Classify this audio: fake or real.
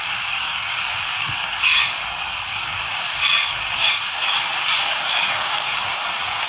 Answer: fake